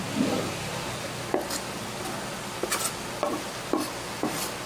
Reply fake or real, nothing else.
real